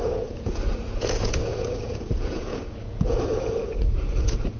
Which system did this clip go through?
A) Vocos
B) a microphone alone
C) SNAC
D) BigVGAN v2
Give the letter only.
A